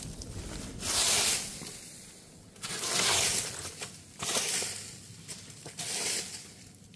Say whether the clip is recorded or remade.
recorded